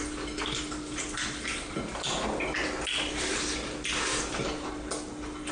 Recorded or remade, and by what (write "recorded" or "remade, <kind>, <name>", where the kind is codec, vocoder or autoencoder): recorded